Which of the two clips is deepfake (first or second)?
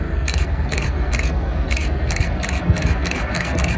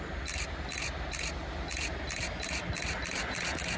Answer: first